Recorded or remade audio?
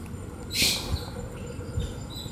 recorded